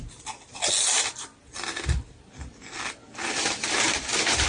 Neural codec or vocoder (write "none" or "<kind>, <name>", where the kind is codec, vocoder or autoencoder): none